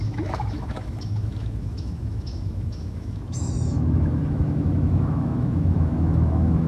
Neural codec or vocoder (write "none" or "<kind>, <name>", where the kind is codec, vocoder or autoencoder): autoencoder, DAC-VAE